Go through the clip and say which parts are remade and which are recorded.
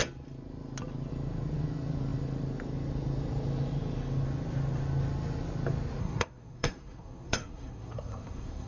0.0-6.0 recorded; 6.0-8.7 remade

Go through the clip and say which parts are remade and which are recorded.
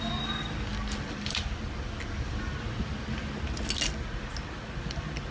0.0-5.3 recorded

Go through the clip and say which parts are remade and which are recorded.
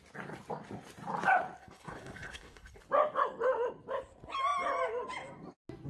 0.0-1.6 recorded; 1.6-2.8 remade; 2.8-5.9 recorded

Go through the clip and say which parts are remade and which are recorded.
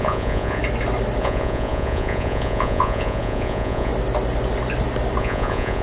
0.0-0.6 remade; 0.6-1.2 recorded; 1.2-3.9 remade; 3.9-5.2 recorded; 5.2-5.8 remade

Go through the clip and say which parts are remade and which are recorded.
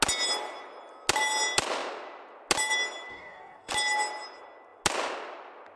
0.0-3.1 recorded; 3.1-3.7 remade; 3.7-5.8 recorded